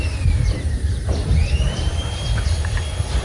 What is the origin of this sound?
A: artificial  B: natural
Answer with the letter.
A